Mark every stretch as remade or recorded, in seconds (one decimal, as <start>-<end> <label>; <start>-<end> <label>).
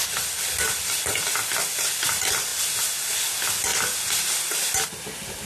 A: 0.0-5.5 recorded